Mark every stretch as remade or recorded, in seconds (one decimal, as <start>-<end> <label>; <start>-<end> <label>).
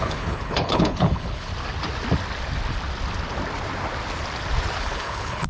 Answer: 0.0-1.5 remade; 1.5-4.8 recorded; 4.8-5.5 remade